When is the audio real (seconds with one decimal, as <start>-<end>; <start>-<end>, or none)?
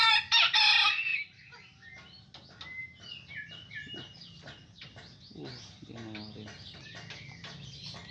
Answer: 0.0-8.1